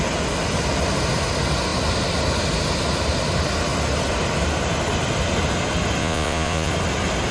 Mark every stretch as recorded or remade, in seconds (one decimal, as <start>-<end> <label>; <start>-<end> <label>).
0.0-6.0 recorded; 6.0-6.7 remade; 6.7-7.3 recorded